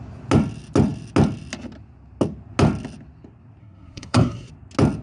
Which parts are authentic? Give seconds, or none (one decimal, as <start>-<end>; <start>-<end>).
0.0-3.6; 4.5-5.0